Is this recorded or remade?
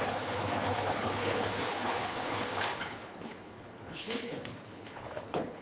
remade